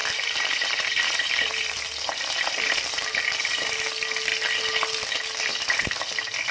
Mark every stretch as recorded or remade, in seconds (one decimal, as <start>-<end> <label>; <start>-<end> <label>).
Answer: 0.0-3.9 remade; 3.9-6.5 recorded